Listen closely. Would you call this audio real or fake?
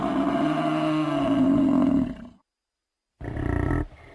real